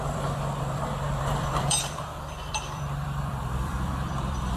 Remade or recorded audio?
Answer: remade